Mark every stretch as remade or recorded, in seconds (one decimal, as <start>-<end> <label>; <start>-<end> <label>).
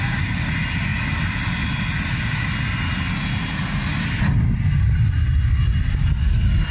0.0-6.7 recorded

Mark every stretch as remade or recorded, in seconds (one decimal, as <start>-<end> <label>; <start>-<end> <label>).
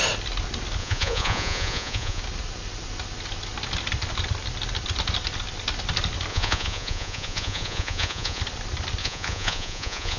0.0-0.8 recorded; 0.8-2.2 remade; 2.2-6.3 recorded; 6.3-8.4 remade; 8.4-9.0 recorded; 9.0-10.2 remade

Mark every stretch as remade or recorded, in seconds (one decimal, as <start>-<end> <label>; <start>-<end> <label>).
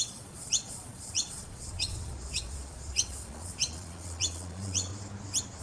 0.0-4.9 remade; 4.9-5.6 recorded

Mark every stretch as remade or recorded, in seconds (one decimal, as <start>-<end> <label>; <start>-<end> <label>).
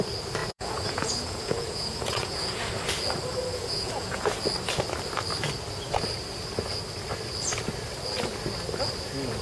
0.0-0.4 recorded; 0.4-2.7 remade; 2.7-3.5 recorded; 3.5-4.2 remade; 4.2-9.4 recorded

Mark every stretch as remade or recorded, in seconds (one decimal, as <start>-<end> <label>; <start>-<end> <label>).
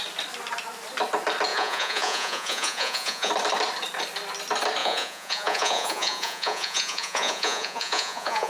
0.0-1.5 recorded; 1.5-3.3 remade; 3.3-4.8 recorded; 4.8-8.5 remade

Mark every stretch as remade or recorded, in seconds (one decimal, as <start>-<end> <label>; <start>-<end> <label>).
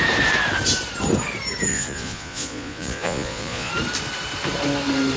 0.0-1.7 recorded; 1.7-3.7 remade; 3.7-5.2 recorded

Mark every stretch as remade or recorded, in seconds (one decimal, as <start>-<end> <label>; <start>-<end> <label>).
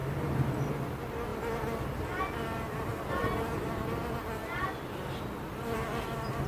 0.0-6.5 recorded